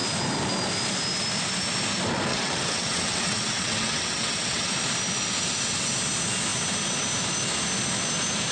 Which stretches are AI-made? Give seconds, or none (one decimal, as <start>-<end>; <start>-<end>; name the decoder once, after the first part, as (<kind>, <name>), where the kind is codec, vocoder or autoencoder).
2.3-4.7 (vocoder, WaveNeXt)